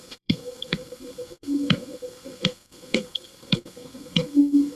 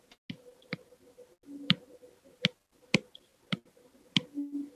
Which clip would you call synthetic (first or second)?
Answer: first